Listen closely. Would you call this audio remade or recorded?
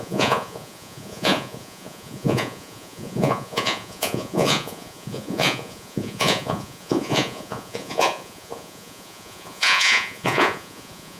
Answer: remade